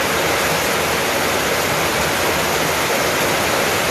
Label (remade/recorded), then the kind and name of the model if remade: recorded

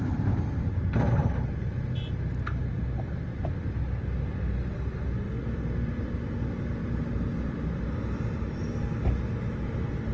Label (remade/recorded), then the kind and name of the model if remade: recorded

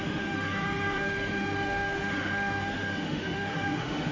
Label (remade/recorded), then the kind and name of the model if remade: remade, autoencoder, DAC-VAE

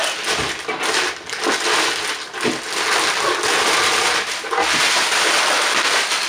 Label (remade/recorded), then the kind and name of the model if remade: recorded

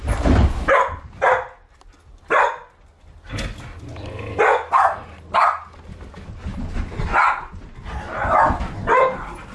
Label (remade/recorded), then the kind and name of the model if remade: recorded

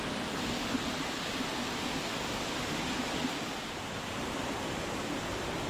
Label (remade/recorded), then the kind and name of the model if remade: recorded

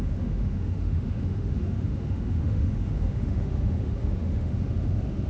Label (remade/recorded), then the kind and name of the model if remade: remade, autoencoder, DAC-VAE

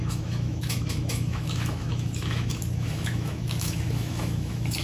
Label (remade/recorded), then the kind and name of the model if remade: remade, autoencoder, DAC-VAE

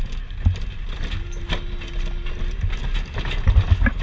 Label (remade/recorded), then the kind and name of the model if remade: recorded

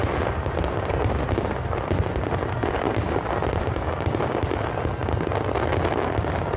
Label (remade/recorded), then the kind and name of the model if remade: recorded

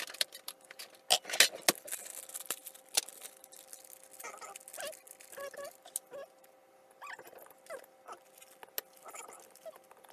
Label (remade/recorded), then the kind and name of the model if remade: recorded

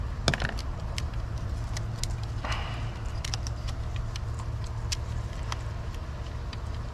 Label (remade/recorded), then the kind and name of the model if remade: recorded